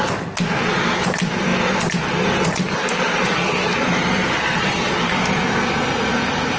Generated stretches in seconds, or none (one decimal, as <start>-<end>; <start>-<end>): none